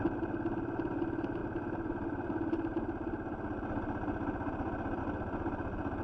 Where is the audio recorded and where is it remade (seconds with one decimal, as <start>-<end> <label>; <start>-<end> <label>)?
0.0-6.0 recorded